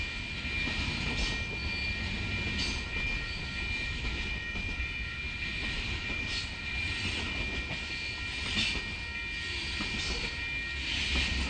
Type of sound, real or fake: real